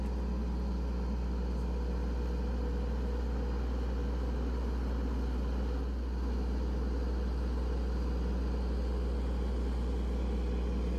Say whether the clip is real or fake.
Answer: real